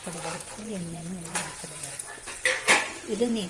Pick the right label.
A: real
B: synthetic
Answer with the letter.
B